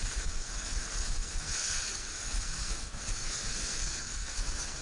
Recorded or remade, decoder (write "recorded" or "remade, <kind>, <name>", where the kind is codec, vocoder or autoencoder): remade, codec, SNAC